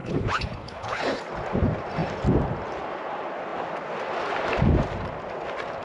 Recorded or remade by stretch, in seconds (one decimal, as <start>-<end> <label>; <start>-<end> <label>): 0.0-1.2 remade; 1.2-5.8 recorded